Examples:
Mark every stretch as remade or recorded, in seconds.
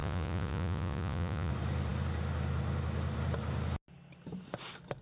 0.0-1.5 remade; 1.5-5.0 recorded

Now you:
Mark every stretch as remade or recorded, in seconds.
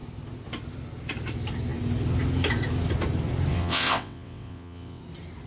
0.0-3.5 recorded; 3.5-5.0 remade; 5.0-5.5 recorded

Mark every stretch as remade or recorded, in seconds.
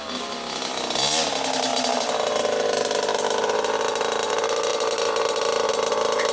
0.0-6.3 recorded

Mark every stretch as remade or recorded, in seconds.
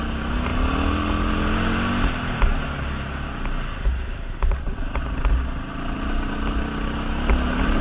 0.0-7.8 recorded